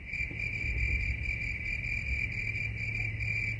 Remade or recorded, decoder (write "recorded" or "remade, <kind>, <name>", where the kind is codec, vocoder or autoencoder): recorded